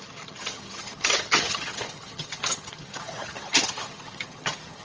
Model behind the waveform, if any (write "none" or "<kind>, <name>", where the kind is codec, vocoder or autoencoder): vocoder, HiFi-GAN